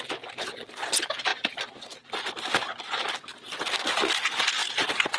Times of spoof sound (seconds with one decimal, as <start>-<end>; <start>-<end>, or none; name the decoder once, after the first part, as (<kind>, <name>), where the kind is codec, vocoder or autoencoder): 4.6-5.2 (vocoder, BigVGAN v2)